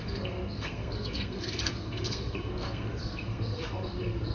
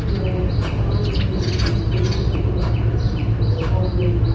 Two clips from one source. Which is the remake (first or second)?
first